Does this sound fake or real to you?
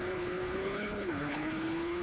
fake